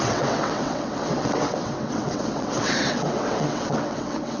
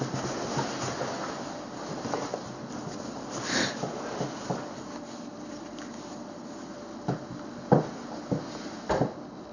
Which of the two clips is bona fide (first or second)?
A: second